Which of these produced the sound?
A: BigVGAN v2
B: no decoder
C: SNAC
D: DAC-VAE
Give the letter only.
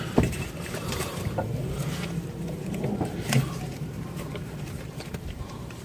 A